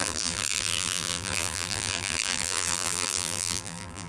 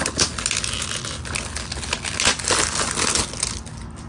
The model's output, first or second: first